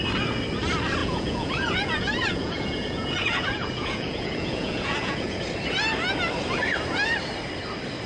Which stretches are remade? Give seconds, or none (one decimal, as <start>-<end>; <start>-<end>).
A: 1.0-5.4